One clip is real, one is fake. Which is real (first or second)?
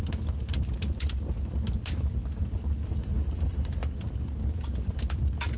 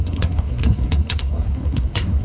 first